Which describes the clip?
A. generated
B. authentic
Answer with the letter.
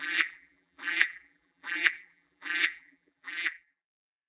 A